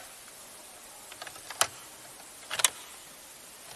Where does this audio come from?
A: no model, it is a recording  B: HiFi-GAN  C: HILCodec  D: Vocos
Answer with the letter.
A